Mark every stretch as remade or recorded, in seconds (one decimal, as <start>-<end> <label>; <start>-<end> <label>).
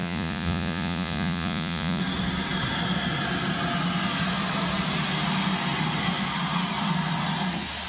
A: 0.0-2.0 remade; 2.0-7.9 recorded